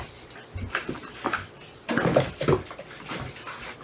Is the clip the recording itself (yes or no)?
yes